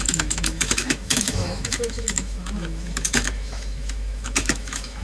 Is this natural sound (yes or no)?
no